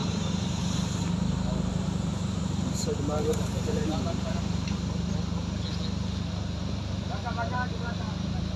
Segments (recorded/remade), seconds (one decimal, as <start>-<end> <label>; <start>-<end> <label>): 0.0-1.0 remade; 1.0-1.7 recorded; 1.7-4.4 remade; 4.4-8.6 recorded